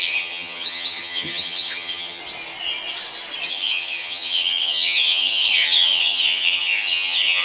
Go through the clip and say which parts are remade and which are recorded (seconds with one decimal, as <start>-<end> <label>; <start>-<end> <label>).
0.0-2.2 remade; 2.2-3.5 recorded; 3.5-7.4 remade